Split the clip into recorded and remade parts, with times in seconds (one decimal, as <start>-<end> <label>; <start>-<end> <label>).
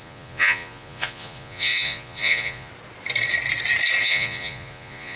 0.0-2.7 remade; 2.7-4.0 recorded; 4.0-5.2 remade